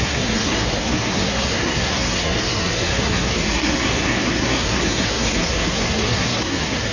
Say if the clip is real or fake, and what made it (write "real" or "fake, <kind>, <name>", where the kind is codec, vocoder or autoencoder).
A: fake, codec, SNAC